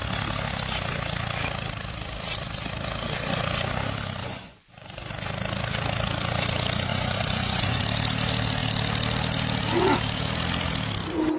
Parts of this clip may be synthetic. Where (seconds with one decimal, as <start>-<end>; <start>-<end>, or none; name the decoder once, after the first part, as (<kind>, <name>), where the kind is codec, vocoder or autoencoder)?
4.2-5.1 (vocoder, Vocos); 6.9-7.8